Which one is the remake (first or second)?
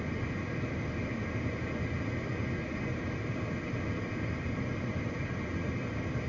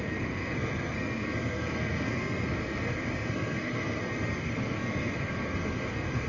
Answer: second